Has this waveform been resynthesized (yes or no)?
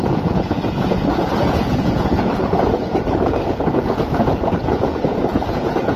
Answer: yes